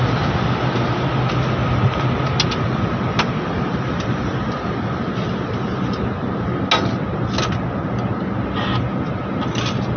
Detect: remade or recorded recorded